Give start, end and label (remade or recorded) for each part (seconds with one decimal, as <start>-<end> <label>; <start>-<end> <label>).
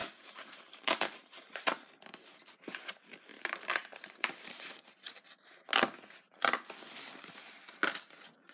0.0-2.8 remade; 2.8-3.3 recorded; 3.3-5.7 remade; 5.7-8.5 recorded